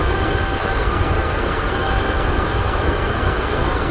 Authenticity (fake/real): fake